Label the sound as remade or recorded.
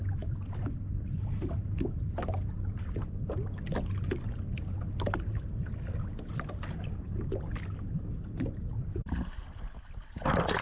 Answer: recorded